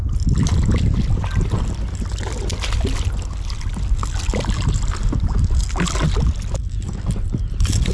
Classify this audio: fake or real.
real